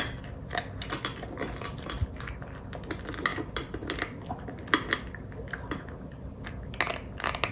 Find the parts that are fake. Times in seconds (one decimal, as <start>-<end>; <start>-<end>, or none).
none